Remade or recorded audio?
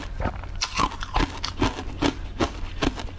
recorded